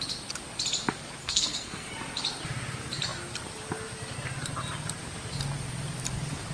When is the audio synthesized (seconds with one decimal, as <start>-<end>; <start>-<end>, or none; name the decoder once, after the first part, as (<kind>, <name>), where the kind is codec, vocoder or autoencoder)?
1.2-1.9 (codec, SNAC)